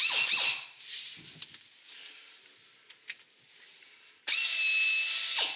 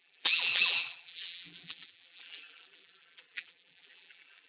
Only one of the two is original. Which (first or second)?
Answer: first